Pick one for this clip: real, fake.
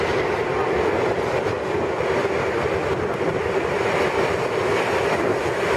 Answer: real